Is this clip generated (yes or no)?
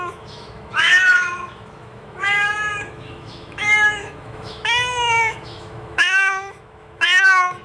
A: yes